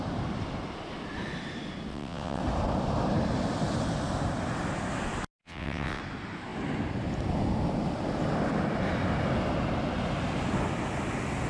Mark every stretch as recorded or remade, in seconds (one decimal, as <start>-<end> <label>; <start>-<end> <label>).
0.0-1.9 recorded; 1.9-2.4 remade; 2.4-5.4 recorded; 5.4-6.0 remade; 6.0-11.5 recorded